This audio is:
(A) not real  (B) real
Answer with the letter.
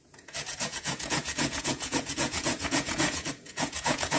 A